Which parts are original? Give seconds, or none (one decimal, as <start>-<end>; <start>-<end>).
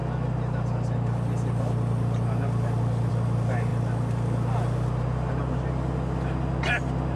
0.0-7.2